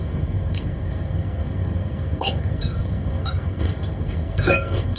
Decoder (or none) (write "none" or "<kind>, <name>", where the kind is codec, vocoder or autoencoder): codec, SNAC